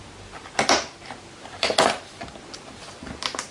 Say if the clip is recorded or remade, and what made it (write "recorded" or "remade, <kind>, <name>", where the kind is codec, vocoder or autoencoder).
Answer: recorded